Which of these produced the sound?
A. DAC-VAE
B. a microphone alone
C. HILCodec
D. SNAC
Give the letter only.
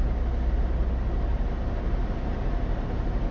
B